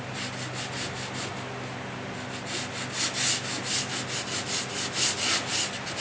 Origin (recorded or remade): recorded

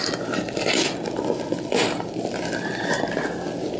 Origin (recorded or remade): remade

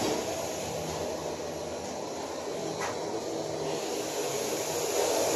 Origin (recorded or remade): recorded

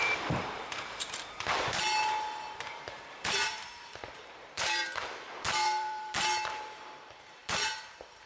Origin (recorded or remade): remade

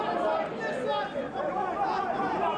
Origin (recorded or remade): recorded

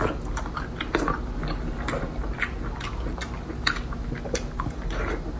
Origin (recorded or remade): recorded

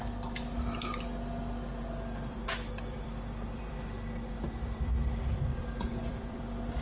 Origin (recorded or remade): remade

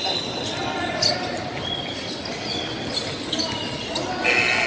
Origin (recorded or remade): recorded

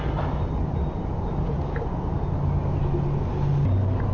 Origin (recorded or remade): recorded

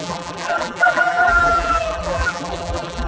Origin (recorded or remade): remade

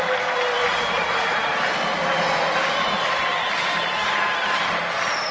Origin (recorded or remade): recorded